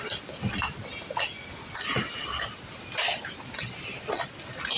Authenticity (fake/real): real